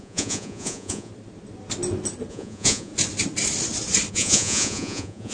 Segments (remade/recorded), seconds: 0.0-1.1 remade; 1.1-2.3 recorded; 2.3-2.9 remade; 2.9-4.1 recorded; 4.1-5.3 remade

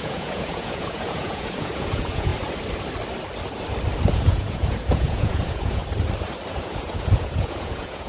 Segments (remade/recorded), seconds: 0.0-2.3 remade; 2.3-4.1 recorded; 4.1-5.8 remade; 5.8-6.5 recorded; 6.5-8.1 remade

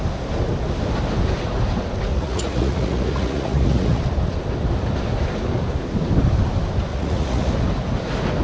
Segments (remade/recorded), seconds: 0.0-2.1 recorded; 2.1-4.0 remade; 4.0-6.9 recorded; 6.9-7.5 remade; 7.5-8.4 recorded

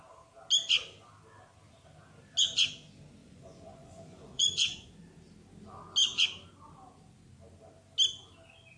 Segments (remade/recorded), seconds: 0.0-3.2 recorded; 3.2-5.0 remade; 5.0-8.8 recorded